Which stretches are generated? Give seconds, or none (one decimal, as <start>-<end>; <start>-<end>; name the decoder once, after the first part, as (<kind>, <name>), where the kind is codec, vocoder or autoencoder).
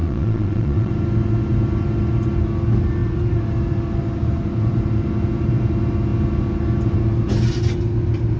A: 0.0-0.9 (vocoder, Vocos)